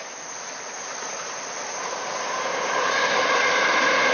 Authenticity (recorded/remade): recorded